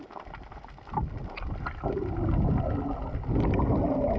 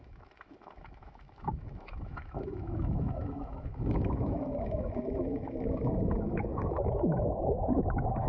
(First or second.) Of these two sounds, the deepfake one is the second